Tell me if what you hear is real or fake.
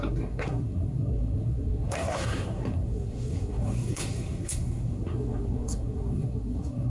fake